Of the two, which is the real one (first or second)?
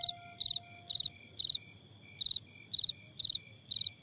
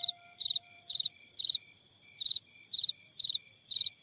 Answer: first